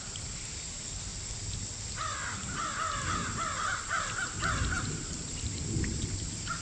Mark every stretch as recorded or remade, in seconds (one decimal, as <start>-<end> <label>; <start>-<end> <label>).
0.0-6.6 recorded